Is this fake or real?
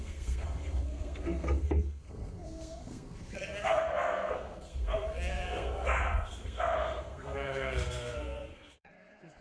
fake